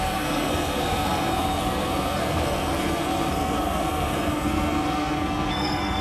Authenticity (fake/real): fake